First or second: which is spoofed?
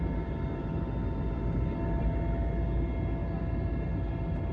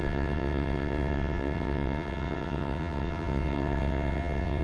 second